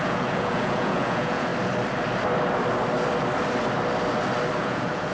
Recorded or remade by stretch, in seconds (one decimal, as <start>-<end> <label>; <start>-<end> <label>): 0.0-1.5 remade; 1.5-4.6 recorded; 4.6-5.1 remade